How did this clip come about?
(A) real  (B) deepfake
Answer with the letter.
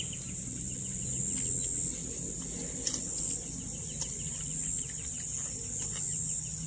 A